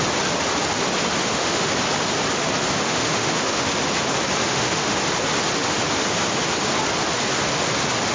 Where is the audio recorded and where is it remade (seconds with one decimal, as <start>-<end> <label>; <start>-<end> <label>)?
0.0-1.2 recorded; 1.2-1.7 remade; 1.7-2.7 recorded; 2.7-3.7 remade; 3.7-4.4 recorded; 4.4-5.0 remade; 5.0-8.1 recorded